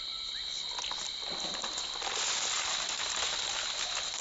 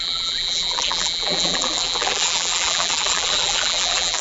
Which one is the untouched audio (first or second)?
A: first